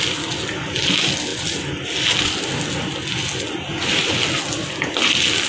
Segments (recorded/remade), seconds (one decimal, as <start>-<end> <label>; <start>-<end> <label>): 0.0-5.5 recorded